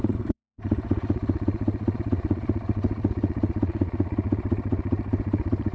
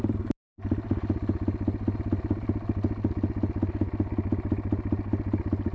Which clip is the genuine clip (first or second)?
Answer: second